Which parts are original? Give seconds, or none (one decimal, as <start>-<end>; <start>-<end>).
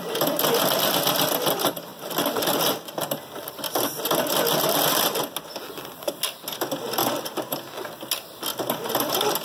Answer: 0.0-1.9; 5.0-9.4